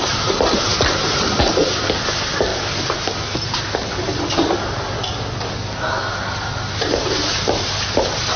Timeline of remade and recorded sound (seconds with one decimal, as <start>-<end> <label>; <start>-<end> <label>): 0.0-8.4 recorded